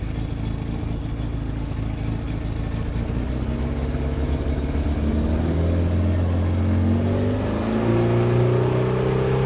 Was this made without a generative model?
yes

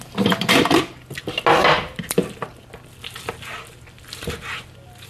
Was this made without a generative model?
yes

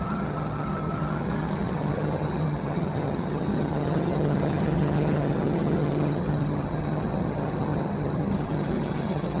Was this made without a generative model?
no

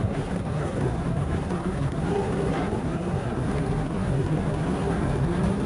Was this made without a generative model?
no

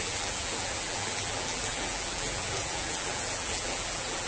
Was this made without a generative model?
no